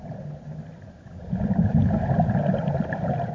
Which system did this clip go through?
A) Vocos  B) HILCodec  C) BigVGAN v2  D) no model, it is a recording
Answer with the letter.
D